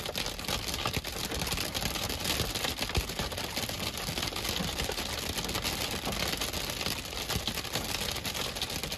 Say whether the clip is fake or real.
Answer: real